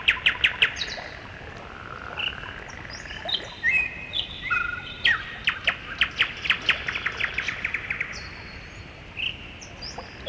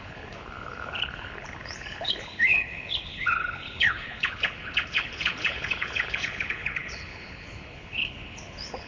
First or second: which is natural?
first